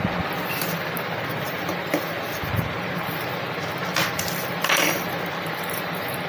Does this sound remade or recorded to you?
recorded